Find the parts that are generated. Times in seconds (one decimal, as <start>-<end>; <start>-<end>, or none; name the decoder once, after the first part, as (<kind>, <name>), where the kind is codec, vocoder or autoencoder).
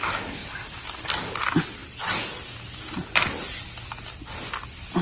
none